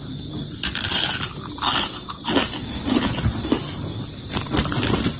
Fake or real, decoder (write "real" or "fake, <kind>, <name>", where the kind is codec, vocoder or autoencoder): real